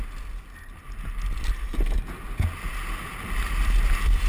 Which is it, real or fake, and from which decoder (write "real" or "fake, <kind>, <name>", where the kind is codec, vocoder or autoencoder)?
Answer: real